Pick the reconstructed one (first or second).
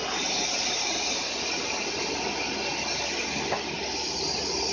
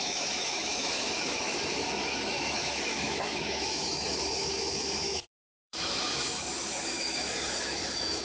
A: second